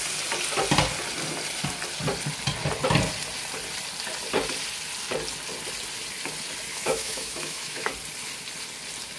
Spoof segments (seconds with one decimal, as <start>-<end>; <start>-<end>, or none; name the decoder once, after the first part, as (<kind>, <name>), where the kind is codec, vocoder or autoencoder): 6.7-7.9 (autoencoder, DAC-VAE)